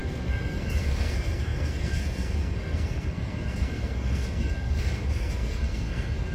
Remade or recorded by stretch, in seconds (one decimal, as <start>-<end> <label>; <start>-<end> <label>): 0.0-6.3 remade